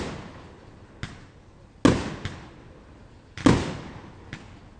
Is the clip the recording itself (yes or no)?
yes